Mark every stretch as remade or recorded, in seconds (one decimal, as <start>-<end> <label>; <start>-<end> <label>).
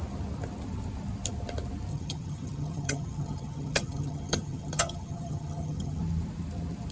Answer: 0.0-1.9 recorded; 1.9-6.0 remade; 6.0-6.9 recorded